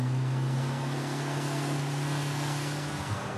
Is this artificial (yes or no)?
yes